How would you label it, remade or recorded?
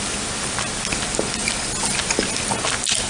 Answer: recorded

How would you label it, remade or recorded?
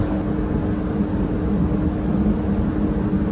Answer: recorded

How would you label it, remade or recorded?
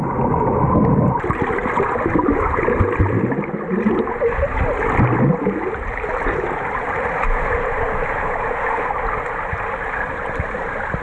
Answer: recorded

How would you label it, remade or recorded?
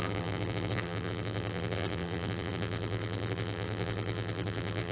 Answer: remade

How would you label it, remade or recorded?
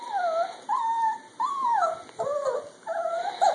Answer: recorded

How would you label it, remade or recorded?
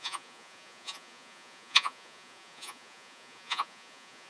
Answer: remade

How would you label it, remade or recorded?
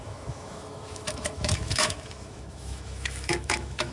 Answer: remade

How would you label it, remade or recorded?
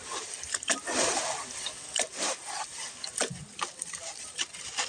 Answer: remade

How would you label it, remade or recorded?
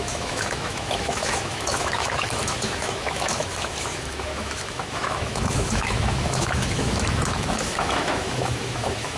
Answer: remade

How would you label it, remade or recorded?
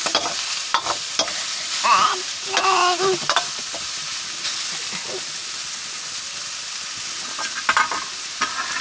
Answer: recorded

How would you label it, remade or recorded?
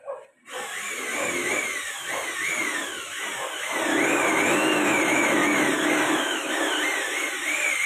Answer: recorded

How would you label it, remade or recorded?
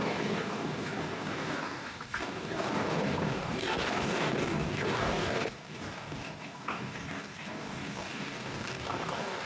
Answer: remade